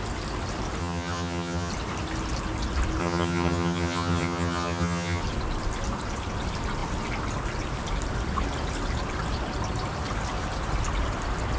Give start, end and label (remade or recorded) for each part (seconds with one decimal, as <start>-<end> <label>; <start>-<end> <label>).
0.0-0.8 recorded; 0.8-1.7 remade; 1.7-3.0 recorded; 3.0-5.2 remade; 5.2-11.6 recorded